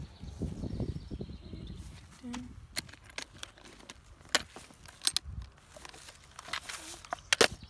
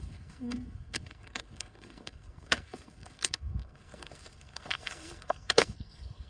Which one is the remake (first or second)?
second